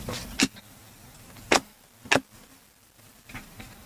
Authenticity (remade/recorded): recorded